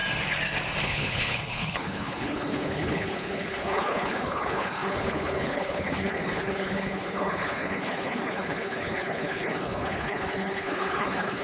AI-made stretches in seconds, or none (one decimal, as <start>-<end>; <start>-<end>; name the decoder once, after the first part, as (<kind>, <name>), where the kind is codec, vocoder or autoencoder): 0.8-11.4 (codec, HILCodec)